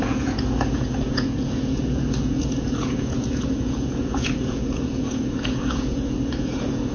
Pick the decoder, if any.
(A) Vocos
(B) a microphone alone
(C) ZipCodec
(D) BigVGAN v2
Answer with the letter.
A